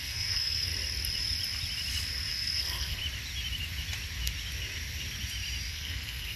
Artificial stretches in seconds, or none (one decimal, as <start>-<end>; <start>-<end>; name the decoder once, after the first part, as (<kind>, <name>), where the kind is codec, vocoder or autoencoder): 0.0-0.7 (codec, SNAC); 2.3-3.0; 5.7-6.4